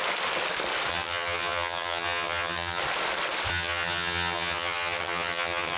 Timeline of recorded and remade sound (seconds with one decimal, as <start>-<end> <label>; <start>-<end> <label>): 0.0-0.9 recorded; 0.9-2.8 remade; 2.8-3.5 recorded; 3.5-5.8 remade